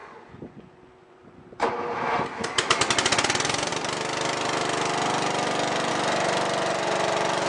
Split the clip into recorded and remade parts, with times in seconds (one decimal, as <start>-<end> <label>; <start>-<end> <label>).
0.0-1.7 remade; 1.7-7.5 recorded